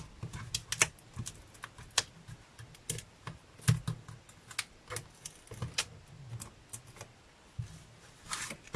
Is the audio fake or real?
real